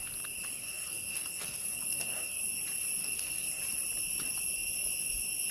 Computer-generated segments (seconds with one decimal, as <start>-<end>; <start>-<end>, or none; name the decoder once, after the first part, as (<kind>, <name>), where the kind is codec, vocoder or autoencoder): 0.5-2.4 (codec, SNAC); 3.0-3.6